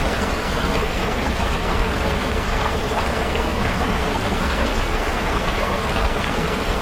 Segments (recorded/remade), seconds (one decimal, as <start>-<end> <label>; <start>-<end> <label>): 0.0-6.8 remade